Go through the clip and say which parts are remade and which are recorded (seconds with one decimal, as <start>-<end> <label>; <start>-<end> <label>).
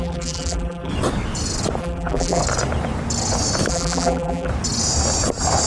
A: 0.0-0.9 remade; 0.9-1.8 recorded; 1.8-2.4 remade; 2.4-3.7 recorded; 3.7-4.5 remade; 4.5-5.7 recorded